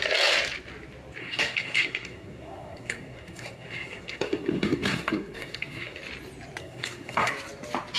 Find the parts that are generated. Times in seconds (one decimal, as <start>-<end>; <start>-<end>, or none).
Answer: 1.2-6.0; 6.6-7.3